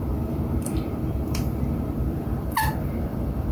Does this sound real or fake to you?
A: fake